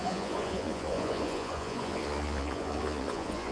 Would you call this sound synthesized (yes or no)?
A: yes